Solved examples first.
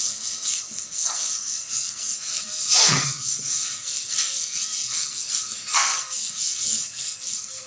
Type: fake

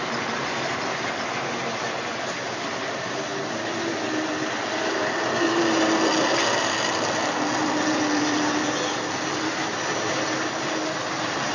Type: real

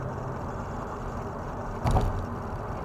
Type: real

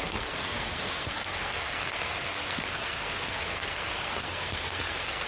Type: fake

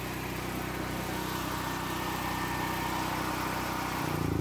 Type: real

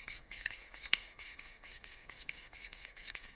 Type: fake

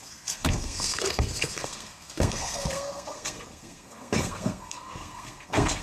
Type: fake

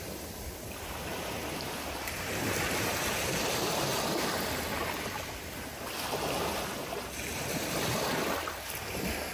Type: real